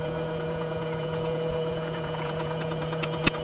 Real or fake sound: fake